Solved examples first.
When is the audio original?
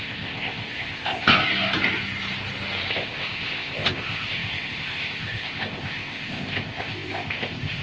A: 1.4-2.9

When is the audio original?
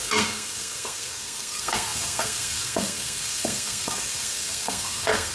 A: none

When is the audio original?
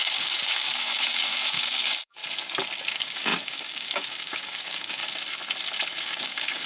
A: 2.2-2.9; 5.0-6.0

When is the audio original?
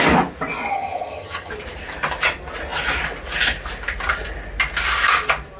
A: 0.0-0.7; 1.5-5.6